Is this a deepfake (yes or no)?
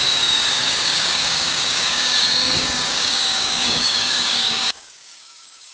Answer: yes